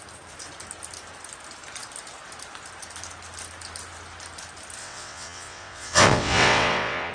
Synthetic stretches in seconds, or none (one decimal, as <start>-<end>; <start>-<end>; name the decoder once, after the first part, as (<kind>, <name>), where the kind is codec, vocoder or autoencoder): 4.8-7.1 (vocoder, WaveNeXt)